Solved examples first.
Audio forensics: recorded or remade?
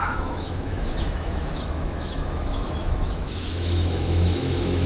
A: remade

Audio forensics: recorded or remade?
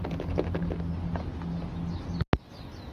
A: recorded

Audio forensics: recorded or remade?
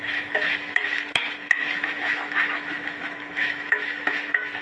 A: remade